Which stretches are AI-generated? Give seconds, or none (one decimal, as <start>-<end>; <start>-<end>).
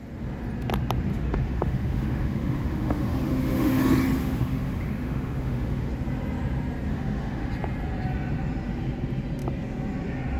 1.1-3.8; 4.2-5.9; 6.9-7.5